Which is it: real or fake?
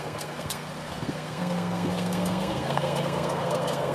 fake